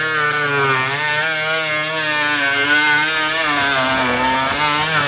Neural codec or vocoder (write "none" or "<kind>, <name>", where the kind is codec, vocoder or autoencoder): none